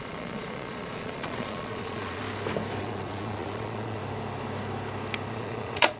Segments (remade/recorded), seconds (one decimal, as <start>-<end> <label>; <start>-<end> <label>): 0.0-2.2 remade; 2.2-2.8 recorded; 2.8-4.0 remade; 4.0-5.3 recorded; 5.3-6.0 remade